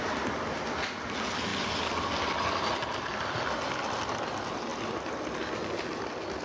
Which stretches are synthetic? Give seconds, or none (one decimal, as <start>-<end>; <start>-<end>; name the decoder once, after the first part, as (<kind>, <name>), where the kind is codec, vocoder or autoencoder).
none